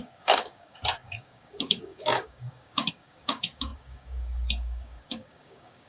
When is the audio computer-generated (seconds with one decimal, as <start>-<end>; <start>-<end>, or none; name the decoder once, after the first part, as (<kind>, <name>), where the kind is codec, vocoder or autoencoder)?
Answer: 0.0-5.9 (codec, DAC)

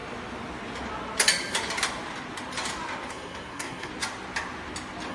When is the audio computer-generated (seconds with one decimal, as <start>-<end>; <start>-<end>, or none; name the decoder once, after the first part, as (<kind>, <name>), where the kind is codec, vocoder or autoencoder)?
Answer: 3.1-3.9 (codec, SNAC)

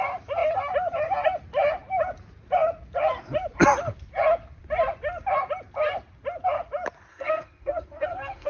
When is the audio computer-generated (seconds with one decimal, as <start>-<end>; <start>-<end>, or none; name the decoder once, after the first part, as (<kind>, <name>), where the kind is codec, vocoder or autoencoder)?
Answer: 7.1-8.5 (codec, SNAC)

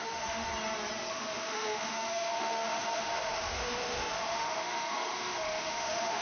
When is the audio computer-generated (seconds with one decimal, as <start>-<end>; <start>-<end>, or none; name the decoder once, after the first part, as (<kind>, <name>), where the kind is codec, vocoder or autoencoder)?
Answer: 0.0-0.5 (autoencoder, DAC-VAE); 1.1-6.2

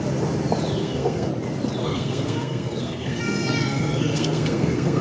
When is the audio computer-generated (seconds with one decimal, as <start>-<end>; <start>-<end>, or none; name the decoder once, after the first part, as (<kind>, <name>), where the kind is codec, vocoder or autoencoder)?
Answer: 0.8-1.3 (codec, SNAC); 1.8-5.0

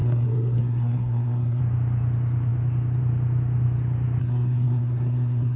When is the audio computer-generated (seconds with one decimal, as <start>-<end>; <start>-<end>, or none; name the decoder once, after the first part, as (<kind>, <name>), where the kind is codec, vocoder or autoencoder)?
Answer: 0.0-1.6 (codec, SNAC); 4.2-5.6

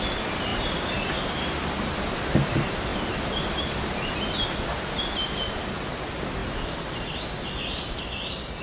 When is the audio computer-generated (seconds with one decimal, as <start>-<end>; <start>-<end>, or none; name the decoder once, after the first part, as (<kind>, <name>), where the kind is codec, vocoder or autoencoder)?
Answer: none